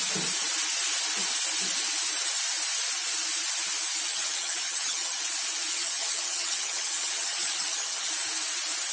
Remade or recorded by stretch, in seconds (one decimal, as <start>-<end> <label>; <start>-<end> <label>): 0.0-4.1 recorded; 4.1-5.2 remade; 5.2-5.7 recorded; 5.7-8.1 remade; 8.1-8.9 recorded